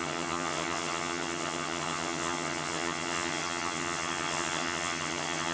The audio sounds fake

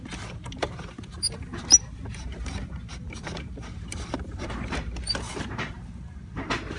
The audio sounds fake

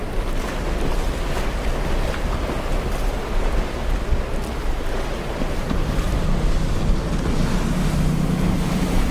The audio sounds real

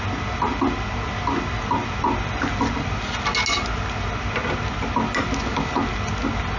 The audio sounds real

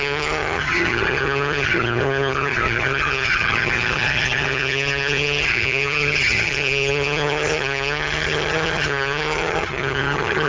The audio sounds fake